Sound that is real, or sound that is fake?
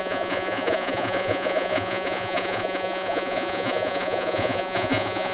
fake